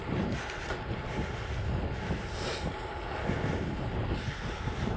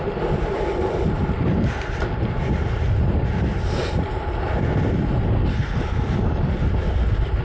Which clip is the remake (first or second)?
second